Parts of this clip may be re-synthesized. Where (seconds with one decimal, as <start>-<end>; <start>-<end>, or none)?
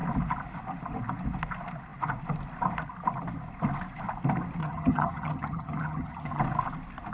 4.6-6.4